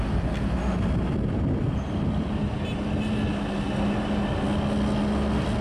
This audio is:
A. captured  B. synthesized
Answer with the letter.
A